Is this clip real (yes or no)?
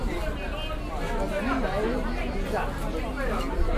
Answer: yes